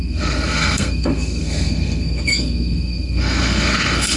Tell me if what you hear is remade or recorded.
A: remade